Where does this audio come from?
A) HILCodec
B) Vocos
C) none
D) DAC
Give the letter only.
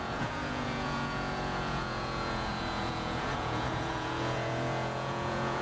B